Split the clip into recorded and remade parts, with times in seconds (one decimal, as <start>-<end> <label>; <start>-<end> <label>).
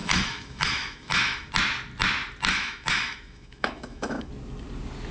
0.0-1.5 remade; 1.5-2.5 recorded; 2.5-4.3 remade; 4.3-5.1 recorded